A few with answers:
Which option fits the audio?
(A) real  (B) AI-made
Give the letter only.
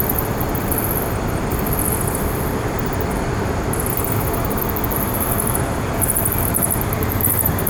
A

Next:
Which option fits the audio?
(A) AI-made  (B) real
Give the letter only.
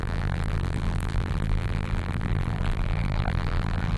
A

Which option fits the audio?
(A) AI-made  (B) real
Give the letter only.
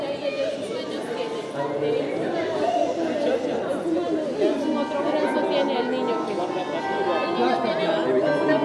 B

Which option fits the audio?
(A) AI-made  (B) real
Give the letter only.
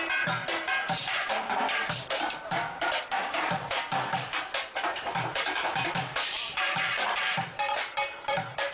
A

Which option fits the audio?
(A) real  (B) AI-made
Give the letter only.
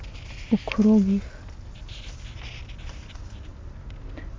A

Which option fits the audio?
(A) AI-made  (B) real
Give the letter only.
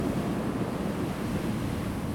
B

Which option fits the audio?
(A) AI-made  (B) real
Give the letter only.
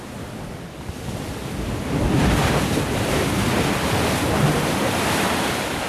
B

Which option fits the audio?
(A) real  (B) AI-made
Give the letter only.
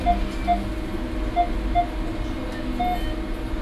A